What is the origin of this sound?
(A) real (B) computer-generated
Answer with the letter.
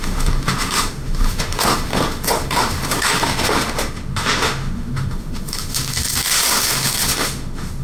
B